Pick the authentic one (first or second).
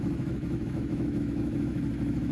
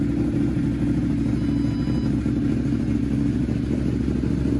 second